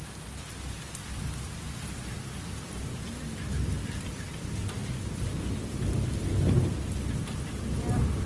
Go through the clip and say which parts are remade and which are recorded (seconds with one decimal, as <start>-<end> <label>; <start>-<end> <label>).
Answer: 0.0-8.3 recorded